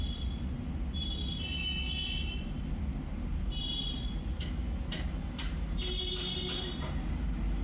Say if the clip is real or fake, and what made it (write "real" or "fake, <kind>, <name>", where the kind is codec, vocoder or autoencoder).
real